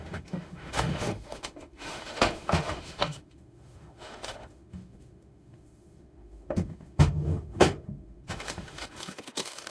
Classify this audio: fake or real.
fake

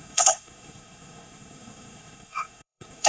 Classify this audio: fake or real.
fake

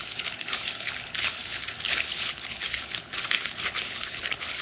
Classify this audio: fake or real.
fake